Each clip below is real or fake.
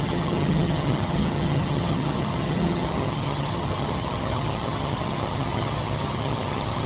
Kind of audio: fake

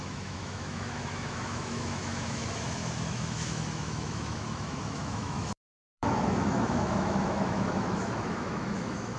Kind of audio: fake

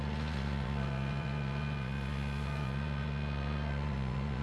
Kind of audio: fake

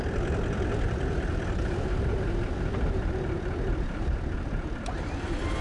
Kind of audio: real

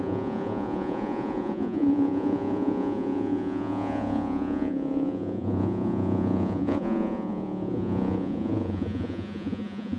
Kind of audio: fake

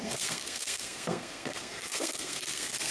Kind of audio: fake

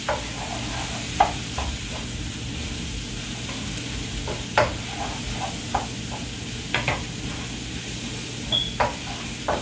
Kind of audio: real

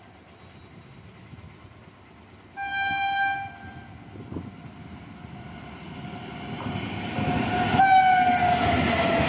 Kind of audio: real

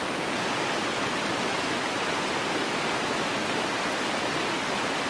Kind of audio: real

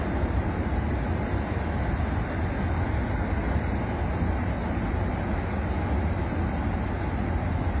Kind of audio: real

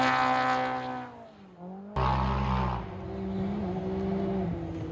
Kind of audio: real